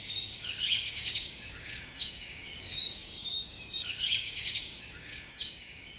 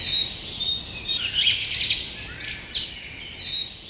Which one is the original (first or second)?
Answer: second